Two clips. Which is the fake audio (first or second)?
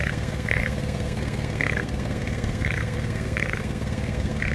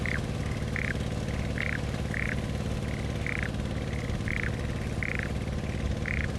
first